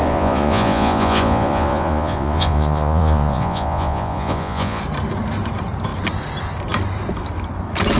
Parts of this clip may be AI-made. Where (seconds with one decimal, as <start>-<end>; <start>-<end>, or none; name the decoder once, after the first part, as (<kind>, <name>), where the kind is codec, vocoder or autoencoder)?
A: 0.0-4.8 (vocoder, Vocos)